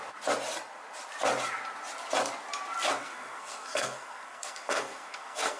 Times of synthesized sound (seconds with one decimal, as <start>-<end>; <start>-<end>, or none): 3.0-5.6